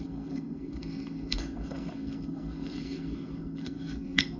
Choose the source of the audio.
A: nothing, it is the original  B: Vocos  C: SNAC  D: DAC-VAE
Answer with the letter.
C